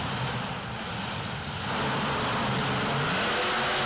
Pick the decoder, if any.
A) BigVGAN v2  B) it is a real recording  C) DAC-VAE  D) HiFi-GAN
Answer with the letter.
B